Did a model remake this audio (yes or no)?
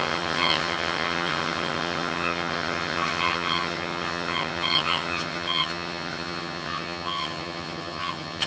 yes